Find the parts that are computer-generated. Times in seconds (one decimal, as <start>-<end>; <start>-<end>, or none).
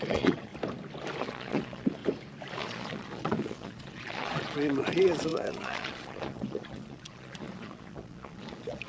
0.0-0.5; 1.2-2.0; 2.5-8.9